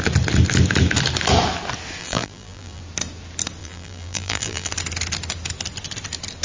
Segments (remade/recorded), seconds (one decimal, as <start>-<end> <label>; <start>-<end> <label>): 0.0-2.0 recorded; 2.0-2.8 remade; 2.8-3.6 recorded; 3.6-4.7 remade; 4.7-6.4 recorded